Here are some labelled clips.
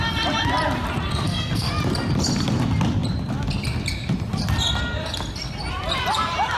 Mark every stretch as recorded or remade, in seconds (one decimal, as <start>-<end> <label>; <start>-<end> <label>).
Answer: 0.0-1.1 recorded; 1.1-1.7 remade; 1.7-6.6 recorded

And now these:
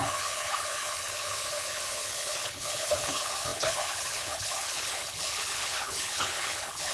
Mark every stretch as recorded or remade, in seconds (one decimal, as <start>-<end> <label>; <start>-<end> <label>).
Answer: 0.0-6.9 remade

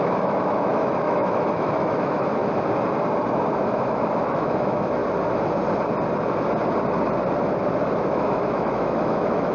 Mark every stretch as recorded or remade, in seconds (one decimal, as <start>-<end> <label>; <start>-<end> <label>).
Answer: 0.0-2.4 remade; 2.4-3.6 recorded; 3.6-5.0 remade; 5.0-7.9 recorded; 7.9-9.5 remade